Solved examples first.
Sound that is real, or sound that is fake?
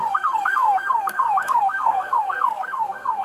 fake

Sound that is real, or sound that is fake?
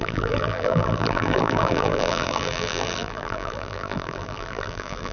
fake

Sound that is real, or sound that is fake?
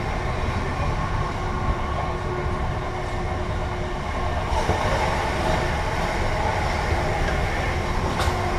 real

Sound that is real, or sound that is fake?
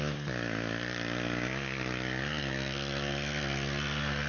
real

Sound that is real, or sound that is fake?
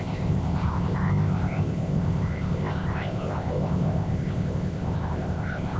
fake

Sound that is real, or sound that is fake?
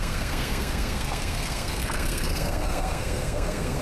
fake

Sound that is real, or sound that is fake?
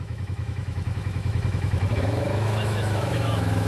fake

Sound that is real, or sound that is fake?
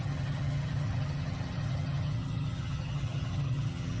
fake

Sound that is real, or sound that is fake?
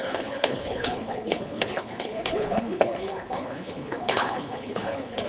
fake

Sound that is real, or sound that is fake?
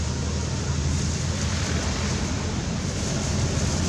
real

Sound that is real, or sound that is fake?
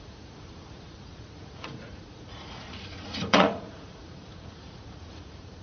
fake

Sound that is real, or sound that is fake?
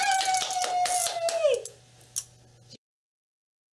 real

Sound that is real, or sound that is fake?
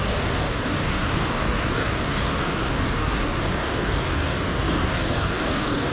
fake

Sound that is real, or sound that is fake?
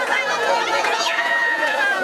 fake